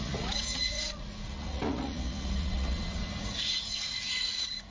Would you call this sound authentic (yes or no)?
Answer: no